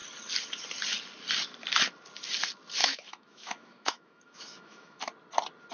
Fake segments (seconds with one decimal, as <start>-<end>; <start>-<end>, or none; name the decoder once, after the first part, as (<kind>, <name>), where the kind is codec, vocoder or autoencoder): 2.8-5.0 (autoencoder, DAC-VAE)